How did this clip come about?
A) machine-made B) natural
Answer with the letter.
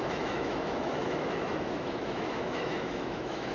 A